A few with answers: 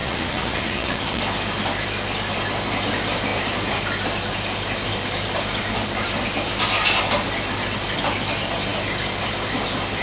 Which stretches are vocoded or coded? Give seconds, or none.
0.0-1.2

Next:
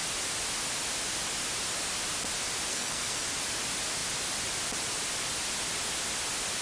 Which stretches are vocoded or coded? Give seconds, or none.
2.7-3.4

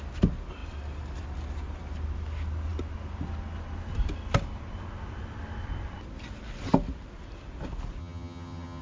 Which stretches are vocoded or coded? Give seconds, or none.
8.0-8.8

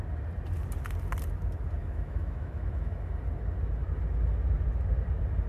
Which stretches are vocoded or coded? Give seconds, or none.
1.8-3.1